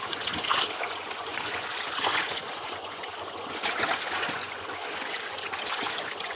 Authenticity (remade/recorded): remade